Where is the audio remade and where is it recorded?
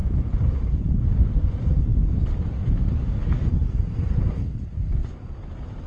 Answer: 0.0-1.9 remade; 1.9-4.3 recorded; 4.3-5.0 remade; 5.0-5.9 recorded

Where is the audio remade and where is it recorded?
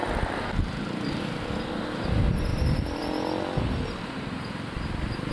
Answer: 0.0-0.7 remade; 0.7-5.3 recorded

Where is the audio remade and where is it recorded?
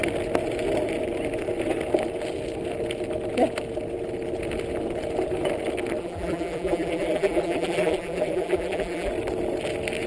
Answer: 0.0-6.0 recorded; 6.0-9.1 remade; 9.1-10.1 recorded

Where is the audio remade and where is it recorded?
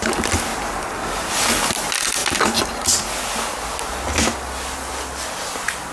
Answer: 0.0-5.9 recorded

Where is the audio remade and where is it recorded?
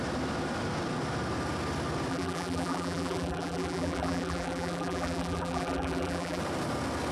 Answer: 0.0-2.1 recorded; 2.1-6.4 remade; 6.4-7.1 recorded